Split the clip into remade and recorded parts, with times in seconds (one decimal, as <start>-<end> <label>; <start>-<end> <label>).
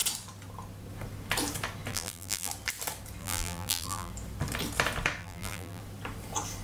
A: 0.0-1.9 recorded; 1.9-2.5 remade; 2.5-3.2 recorded; 3.2-4.1 remade; 4.1-5.2 recorded; 5.2-5.8 remade; 5.8-6.6 recorded